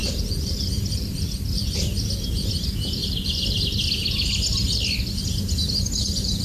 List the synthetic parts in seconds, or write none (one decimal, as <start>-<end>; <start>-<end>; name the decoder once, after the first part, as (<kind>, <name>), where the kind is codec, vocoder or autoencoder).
0.0-1.6 (vocoder, BigVGAN v2); 3.0-3.6